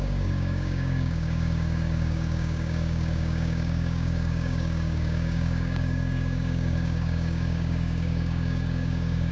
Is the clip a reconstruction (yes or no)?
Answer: yes